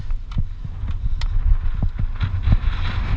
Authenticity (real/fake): real